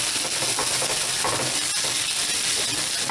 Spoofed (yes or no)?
no